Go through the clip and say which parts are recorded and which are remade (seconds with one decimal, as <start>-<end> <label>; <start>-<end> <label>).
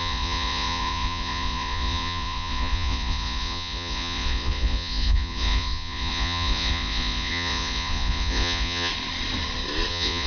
0.0-8.9 remade; 8.9-9.9 recorded; 9.9-10.3 remade